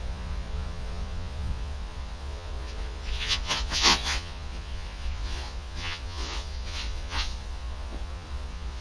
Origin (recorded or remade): remade